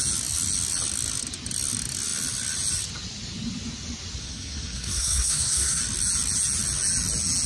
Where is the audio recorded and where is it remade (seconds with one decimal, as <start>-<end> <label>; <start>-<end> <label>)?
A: 0.0-4.2 recorded; 4.2-5.8 remade; 5.8-7.5 recorded